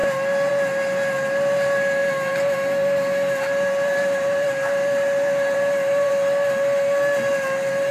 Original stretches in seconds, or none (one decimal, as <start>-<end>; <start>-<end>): 0.0-2.0; 6.1-7.9